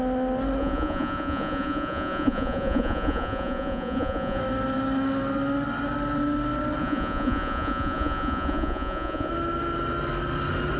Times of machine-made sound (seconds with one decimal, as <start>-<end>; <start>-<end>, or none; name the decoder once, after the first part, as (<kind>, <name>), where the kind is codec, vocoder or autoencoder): 0.6-4.4 (vocoder, Vocos); 6.8-9.3

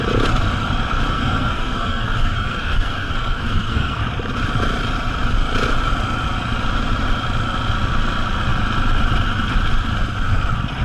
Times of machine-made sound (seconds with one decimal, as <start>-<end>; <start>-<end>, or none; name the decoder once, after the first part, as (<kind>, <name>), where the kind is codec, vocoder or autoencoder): 1.1-4.0 (codec, SNAC)